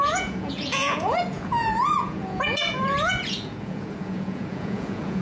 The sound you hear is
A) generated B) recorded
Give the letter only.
A